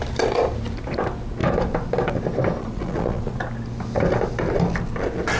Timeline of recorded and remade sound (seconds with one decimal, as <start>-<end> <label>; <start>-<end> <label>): 0.0-2.6 recorded; 2.6-3.4 remade; 3.4-5.4 recorded